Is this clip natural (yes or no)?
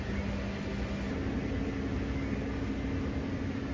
yes